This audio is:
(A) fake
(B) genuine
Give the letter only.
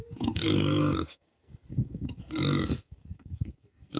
A